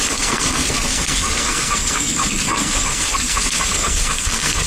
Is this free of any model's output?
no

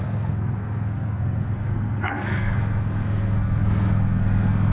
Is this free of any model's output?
no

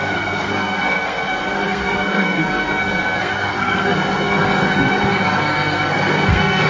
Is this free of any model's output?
no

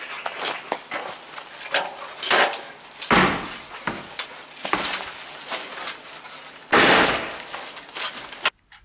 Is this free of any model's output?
yes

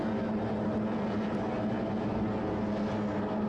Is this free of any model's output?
yes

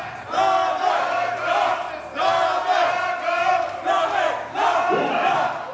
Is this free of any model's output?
yes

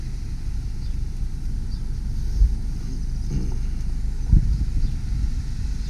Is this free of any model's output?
yes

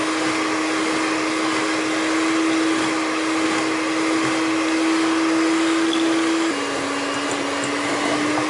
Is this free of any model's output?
yes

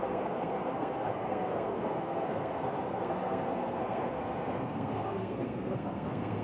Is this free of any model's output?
no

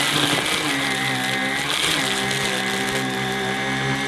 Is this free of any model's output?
yes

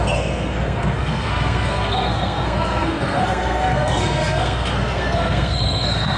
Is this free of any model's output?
no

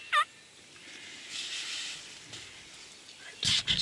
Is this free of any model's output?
yes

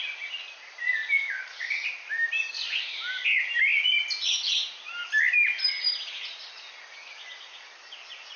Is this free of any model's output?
yes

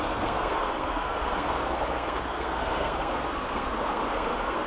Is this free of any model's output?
no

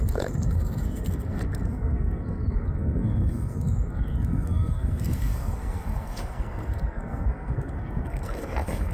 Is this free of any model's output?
no